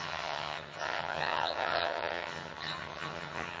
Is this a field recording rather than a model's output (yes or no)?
no